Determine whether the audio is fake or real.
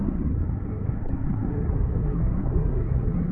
fake